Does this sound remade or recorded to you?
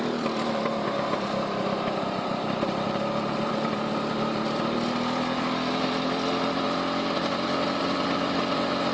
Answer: remade